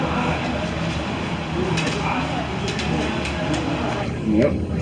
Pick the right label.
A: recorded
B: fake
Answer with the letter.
A